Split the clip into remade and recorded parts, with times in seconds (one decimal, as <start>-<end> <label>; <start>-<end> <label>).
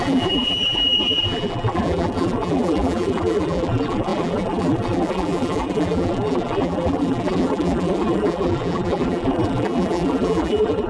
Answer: 0.0-10.9 remade